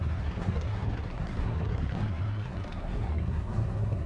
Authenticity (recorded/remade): remade